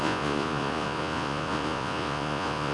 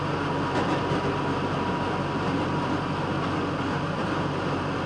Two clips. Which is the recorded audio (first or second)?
second